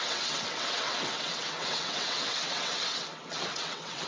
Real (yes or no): no